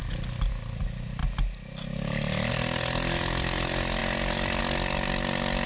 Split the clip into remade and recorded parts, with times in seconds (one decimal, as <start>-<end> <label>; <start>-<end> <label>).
0.0-5.7 recorded